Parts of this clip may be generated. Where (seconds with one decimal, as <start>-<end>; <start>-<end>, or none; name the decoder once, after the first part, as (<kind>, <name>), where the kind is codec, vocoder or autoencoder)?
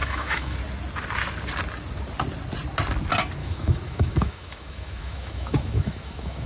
0.0-0.6 (autoencoder, DAC-VAE); 3.4-6.5